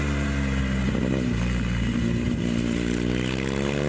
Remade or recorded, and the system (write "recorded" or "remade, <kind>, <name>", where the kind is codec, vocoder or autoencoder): recorded